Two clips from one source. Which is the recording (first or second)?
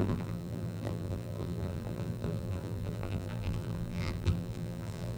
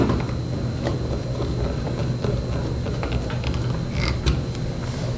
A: second